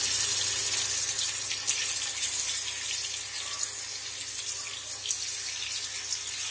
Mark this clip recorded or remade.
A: recorded